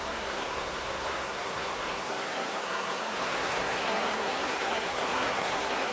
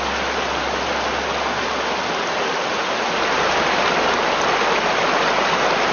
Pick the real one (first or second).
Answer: second